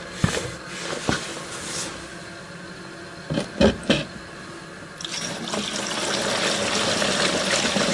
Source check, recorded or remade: recorded